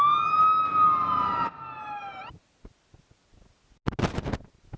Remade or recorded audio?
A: recorded